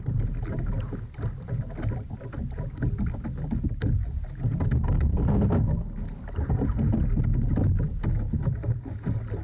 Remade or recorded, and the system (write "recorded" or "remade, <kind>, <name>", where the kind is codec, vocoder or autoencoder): recorded